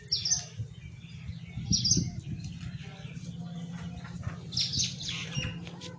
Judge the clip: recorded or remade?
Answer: recorded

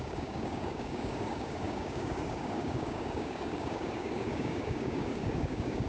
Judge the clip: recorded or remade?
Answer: remade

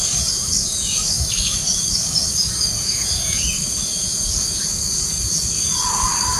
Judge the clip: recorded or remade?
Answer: remade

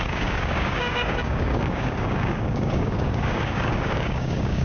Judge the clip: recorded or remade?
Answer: remade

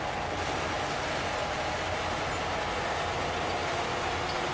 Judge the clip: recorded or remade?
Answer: recorded